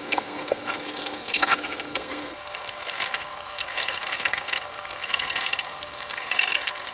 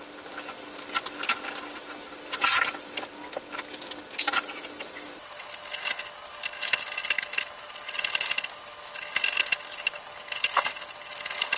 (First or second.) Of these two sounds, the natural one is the second